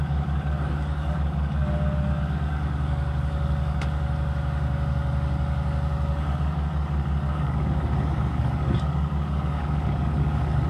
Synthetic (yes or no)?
yes